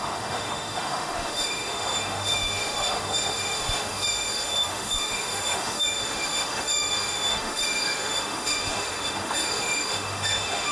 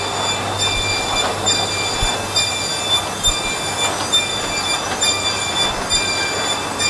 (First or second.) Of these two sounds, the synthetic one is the first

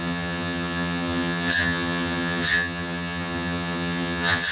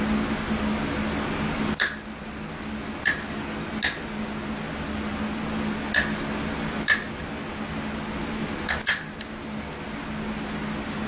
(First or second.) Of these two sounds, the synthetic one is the first